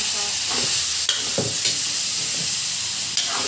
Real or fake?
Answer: real